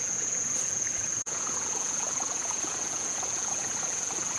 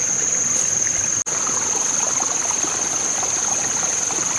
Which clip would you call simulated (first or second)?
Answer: first